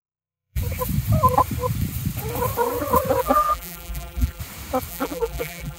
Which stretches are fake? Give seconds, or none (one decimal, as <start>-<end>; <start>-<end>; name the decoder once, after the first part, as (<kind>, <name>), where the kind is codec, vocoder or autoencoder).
0.0-0.6 (vocoder, BigVGAN v2); 3.2-4.4; 4.9-5.8